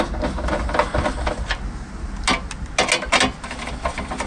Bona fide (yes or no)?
yes